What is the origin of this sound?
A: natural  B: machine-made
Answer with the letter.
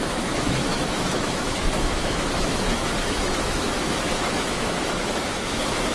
B